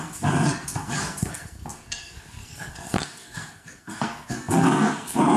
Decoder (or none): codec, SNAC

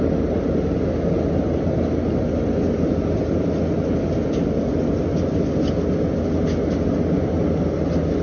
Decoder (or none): none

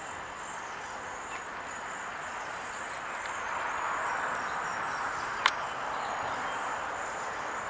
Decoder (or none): none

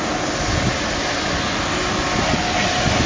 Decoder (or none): none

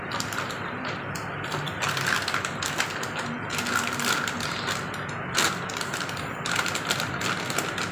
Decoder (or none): none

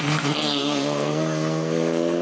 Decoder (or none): codec, SNAC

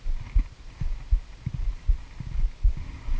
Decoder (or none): none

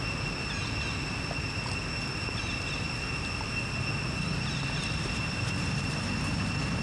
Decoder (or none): none